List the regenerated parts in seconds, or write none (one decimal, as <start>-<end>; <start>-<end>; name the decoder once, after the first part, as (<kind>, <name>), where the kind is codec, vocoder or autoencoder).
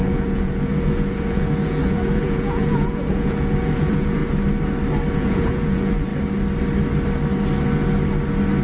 0.0-4.2 (vocoder, Vocos); 5.1-6.1